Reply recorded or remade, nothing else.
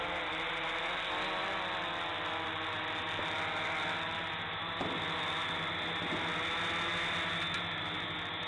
recorded